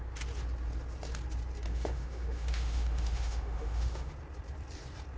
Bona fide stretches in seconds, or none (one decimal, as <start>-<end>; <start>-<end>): 0.0-1.7; 4.1-5.2